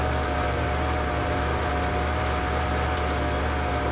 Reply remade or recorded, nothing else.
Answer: recorded